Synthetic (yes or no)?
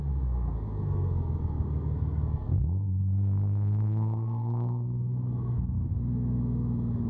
yes